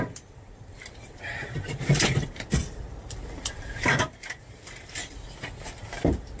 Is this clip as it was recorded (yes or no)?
no